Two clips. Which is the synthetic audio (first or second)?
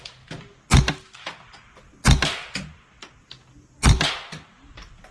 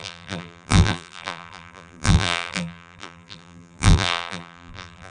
second